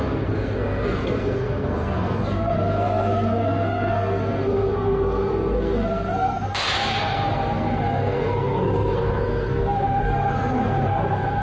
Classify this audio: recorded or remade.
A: remade